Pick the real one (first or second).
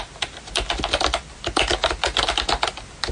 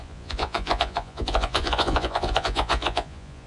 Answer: first